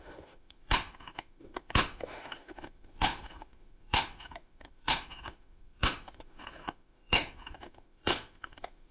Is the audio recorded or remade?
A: remade